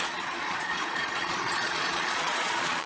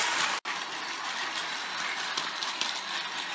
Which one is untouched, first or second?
second